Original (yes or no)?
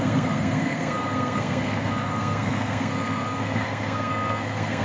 no